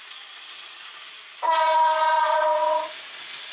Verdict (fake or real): real